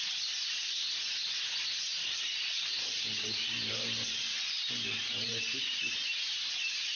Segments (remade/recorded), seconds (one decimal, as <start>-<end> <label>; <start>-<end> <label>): 0.0-1.9 recorded; 1.9-5.8 remade; 5.8-7.0 recorded